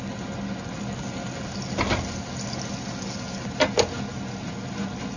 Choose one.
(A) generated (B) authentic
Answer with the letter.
B